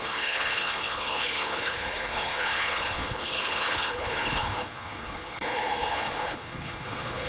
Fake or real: fake